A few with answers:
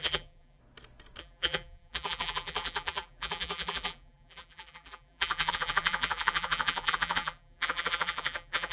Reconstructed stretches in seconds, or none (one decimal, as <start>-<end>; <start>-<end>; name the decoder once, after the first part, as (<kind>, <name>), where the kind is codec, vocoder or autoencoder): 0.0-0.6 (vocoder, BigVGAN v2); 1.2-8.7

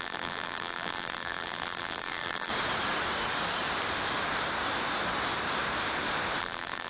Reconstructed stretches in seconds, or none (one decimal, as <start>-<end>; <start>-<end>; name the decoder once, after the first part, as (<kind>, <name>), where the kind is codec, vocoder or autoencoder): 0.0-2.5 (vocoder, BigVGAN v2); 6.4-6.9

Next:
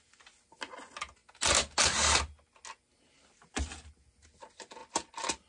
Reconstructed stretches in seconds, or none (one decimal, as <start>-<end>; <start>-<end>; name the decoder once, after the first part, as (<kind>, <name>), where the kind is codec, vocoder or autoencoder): 4.8-5.5 (vocoder, BigVGAN v2)

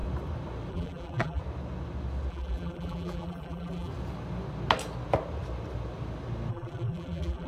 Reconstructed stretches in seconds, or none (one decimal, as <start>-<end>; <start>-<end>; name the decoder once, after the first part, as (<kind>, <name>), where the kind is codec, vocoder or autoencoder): 0.7-1.4 (vocoder, BigVGAN v2); 2.3-3.9; 6.5-7.5

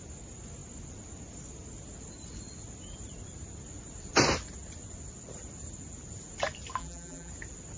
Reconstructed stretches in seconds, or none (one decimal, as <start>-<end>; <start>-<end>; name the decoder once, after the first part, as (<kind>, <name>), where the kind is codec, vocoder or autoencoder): 6.8-7.3 (vocoder, BigVGAN v2)